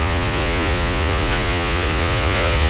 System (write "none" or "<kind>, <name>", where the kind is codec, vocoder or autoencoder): vocoder, Vocos